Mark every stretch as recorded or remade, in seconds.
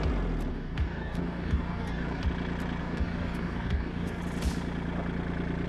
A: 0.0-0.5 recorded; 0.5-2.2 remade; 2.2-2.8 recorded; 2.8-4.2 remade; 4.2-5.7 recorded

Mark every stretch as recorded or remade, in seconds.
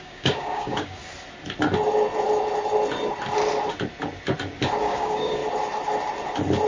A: 0.0-1.0 remade; 1.0-4.8 recorded; 4.8-5.4 remade; 5.4-6.7 recorded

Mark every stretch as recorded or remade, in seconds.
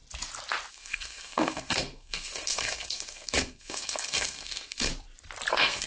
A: 0.0-0.7 recorded; 0.7-4.9 remade; 4.9-5.5 recorded; 5.5-5.9 remade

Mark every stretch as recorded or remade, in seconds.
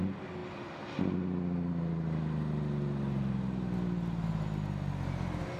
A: 0.0-5.6 recorded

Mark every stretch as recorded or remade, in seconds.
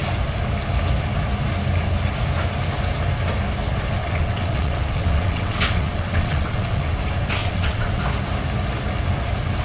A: 0.0-4.0 recorded; 4.0-6.9 remade; 6.9-7.4 recorded; 7.4-8.0 remade; 8.0-9.6 recorded